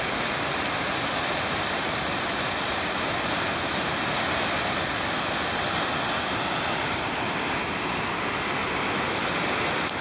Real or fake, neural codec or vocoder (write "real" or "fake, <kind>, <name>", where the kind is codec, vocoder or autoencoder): real